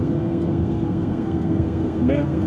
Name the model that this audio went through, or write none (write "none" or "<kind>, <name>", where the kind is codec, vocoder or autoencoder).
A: codec, SNAC